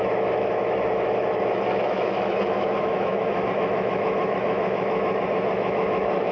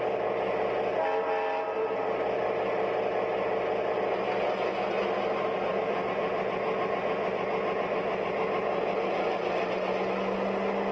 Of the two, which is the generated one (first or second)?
first